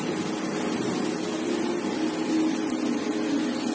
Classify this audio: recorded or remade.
recorded